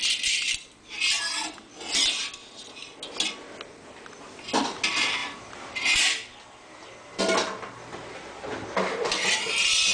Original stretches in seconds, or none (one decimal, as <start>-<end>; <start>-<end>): 0.0-9.9